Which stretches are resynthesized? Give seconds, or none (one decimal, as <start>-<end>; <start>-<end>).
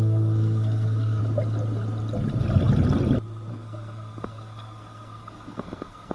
0.0-1.2; 3.5-6.1